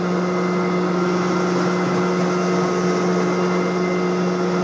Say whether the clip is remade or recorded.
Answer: recorded